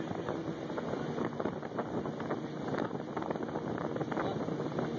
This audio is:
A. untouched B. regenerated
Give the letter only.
A